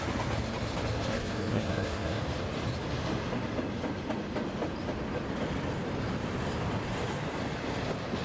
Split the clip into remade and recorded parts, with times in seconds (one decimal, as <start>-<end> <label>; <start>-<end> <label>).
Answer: 0.0-1.1 recorded; 1.1-2.2 remade; 2.2-8.2 recorded